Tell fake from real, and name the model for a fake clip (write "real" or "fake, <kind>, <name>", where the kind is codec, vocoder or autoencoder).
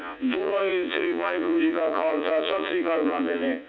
fake, vocoder, Vocos